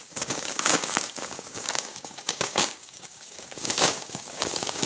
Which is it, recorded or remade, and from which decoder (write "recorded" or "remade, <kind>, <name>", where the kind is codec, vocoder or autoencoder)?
remade, codec, DAC